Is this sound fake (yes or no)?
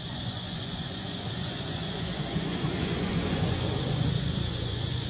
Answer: yes